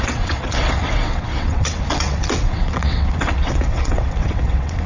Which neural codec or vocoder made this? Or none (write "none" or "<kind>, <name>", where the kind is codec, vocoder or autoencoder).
vocoder, WaveNeXt